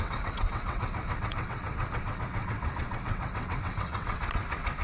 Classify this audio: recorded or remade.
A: remade